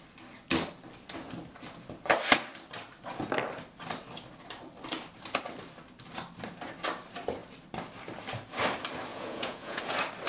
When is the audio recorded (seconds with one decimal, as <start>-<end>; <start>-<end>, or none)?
0.0-9.1; 9.8-10.3